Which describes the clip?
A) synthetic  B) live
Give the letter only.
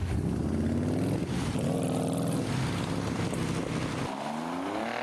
B